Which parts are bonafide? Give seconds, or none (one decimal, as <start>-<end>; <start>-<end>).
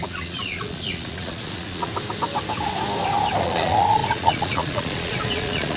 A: 1.9-3.4